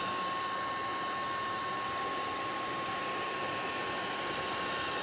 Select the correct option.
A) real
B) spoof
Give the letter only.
A